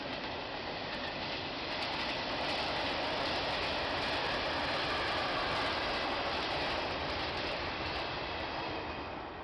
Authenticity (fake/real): real